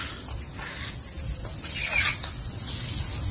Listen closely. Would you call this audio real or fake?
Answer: real